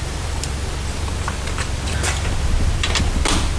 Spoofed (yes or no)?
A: no